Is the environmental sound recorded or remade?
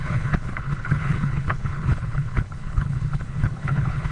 remade